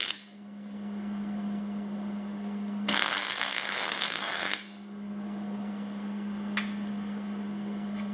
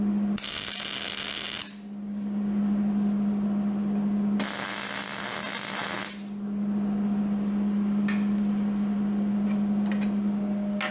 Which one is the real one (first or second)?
second